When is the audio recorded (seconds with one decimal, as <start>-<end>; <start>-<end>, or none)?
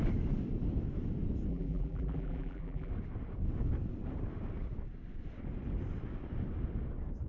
0.0-1.5; 2.9-7.3